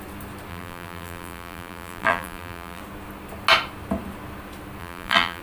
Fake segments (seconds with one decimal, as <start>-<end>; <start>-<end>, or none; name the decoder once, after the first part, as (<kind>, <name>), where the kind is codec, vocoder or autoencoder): 0.5-2.8 (vocoder, BigVGAN v2); 4.8-5.4